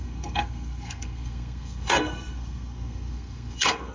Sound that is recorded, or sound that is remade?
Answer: remade